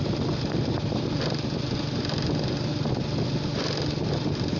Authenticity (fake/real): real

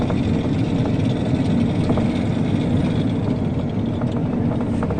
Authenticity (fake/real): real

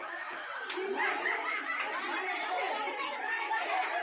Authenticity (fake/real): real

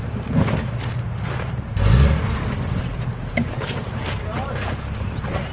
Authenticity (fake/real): fake